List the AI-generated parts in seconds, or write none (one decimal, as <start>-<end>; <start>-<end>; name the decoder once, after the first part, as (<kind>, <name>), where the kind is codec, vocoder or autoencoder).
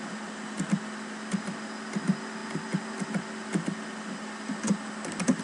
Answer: none